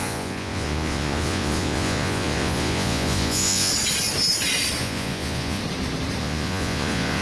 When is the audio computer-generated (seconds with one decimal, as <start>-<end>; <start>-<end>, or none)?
0.0-3.7; 4.8-5.6; 6.2-7.2